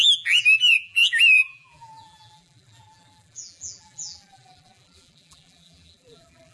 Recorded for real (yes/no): no